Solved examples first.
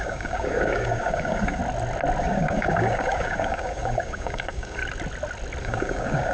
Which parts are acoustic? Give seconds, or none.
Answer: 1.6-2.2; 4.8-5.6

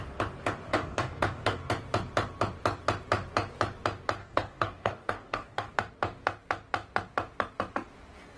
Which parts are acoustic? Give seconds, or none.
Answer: 0.0-0.7; 1.7-4.2; 5.7-8.4

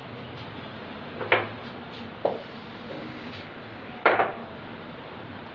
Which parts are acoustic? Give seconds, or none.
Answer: 0.0-2.9; 4.4-5.5

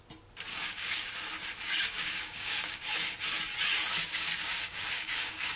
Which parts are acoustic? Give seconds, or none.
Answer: 0.0-0.5; 1.1-1.6; 3.0-4.0

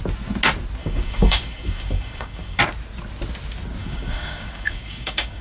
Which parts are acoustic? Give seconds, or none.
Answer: 0.0-0.8; 2.6-3.8